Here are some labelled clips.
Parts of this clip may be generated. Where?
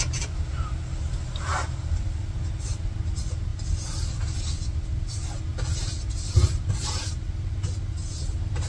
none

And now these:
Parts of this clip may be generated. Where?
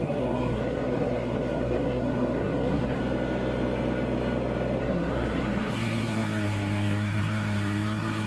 0.0-3.0 (codec, SNAC); 4.8-8.3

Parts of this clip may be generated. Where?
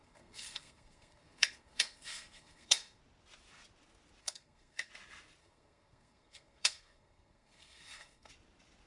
0.0-3.0 (codec, SNAC); 4.2-4.9; 5.4-8.3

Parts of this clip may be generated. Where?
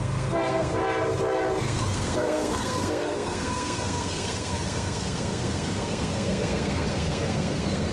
0.0-0.8 (codec, SNAC); 1.6-7.9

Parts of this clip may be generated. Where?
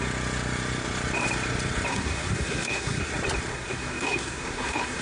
1.9-3.1 (codec, SNAC); 3.5-5.0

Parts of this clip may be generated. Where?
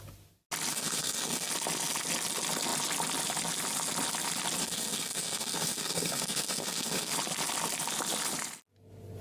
0.7-1.5 (codec, SNAC); 4.6-7.1